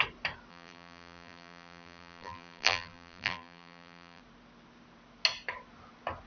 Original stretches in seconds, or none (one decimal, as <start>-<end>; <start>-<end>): 0.0-0.5; 4.2-6.3

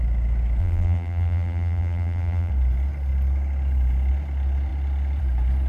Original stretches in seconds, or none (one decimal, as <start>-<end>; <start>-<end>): 0.0-0.6; 2.5-5.7

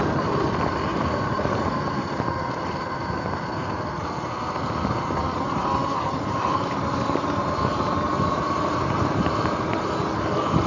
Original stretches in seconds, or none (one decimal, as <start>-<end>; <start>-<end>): 0.0-0.9; 3.9-5.2; 9.2-10.7

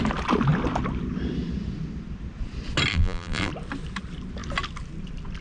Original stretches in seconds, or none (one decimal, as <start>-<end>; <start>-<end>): 0.0-2.9; 3.5-5.4